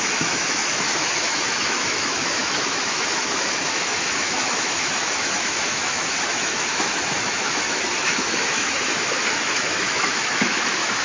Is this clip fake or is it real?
fake